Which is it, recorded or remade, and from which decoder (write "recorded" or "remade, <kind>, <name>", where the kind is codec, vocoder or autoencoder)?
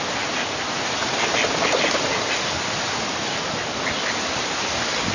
recorded